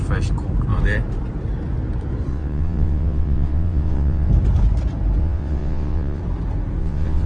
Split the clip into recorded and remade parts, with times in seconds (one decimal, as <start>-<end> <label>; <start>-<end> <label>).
0.0-2.3 recorded; 2.3-4.3 remade; 4.3-5.2 recorded; 5.2-6.2 remade; 6.2-6.8 recorded; 6.8-7.3 remade